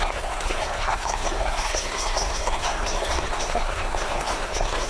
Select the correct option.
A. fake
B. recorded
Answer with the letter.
A